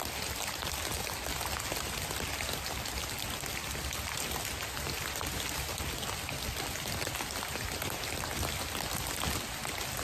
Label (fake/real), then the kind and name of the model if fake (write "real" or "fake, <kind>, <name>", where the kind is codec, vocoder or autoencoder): real